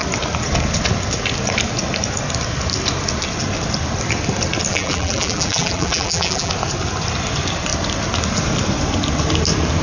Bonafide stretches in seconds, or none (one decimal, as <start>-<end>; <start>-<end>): 0.0-4.7; 6.5-9.8